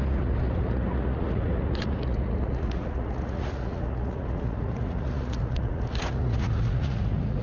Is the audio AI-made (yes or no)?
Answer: yes